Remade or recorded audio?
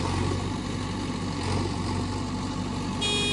recorded